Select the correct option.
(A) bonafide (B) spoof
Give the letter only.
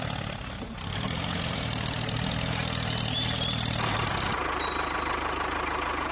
A